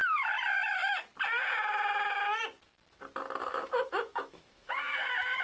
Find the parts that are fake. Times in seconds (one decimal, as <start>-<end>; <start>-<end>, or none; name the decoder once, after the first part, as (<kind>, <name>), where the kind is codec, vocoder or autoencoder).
3.4-4.7 (autoencoder, DAC-VAE)